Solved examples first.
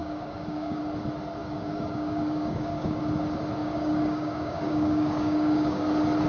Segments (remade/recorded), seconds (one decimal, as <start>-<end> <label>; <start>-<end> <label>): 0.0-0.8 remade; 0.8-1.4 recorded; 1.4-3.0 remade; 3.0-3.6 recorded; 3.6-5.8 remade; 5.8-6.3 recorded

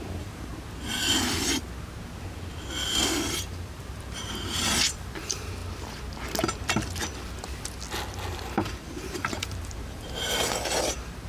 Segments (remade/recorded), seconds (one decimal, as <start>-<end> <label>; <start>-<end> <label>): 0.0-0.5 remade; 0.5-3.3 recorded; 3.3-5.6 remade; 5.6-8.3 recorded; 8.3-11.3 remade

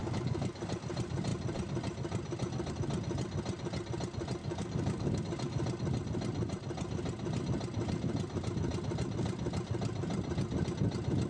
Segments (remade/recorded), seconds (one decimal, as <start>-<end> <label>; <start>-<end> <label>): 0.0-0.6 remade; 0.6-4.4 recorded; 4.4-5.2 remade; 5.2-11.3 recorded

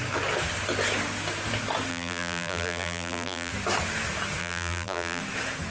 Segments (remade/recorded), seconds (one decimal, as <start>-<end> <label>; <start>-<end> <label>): 0.0-1.9 recorded; 1.9-3.5 remade; 3.5-4.4 recorded; 4.4-5.2 remade; 5.2-5.7 recorded

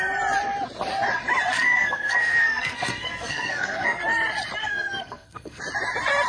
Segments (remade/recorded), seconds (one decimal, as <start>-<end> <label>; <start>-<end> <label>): 0.0-1.5 recorded; 1.5-4.0 remade; 4.0-4.6 recorded; 4.6-5.6 remade; 5.6-6.3 recorded